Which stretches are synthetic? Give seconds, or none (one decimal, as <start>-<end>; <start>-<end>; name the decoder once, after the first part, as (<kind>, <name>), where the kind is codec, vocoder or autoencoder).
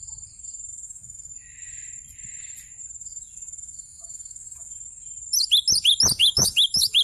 0.7-1.3 (autoencoder, DAC-VAE); 3.0-4.8; 6.2-7.0